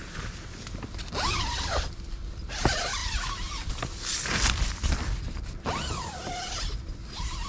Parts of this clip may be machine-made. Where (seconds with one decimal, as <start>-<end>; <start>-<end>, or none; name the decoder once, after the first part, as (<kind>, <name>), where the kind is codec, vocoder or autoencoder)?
none